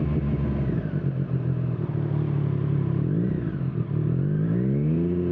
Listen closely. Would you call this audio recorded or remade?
recorded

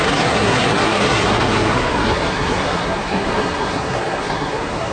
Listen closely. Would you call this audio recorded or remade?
remade